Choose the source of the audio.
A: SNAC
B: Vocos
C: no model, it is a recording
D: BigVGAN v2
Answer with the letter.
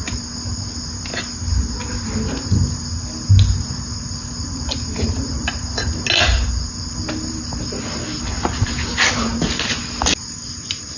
C